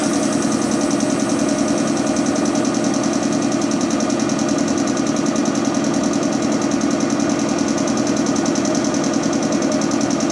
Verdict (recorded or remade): recorded